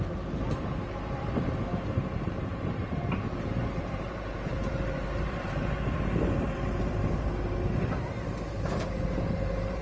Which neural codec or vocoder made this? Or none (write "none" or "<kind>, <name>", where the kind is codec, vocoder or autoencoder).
vocoder, BigVGAN v2